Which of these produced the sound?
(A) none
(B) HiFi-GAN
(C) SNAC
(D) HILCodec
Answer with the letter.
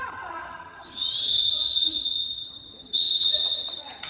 B